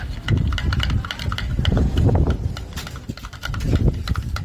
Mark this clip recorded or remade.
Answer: recorded